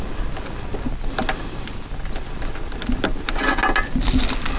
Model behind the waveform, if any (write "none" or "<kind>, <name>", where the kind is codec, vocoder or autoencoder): none